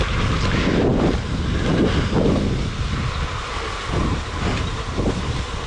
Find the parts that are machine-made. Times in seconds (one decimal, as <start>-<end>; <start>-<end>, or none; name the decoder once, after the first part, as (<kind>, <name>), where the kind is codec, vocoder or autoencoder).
none